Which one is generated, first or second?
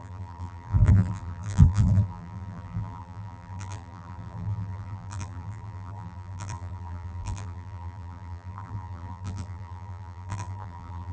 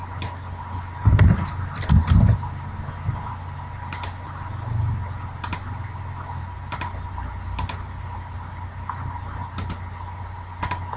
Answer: first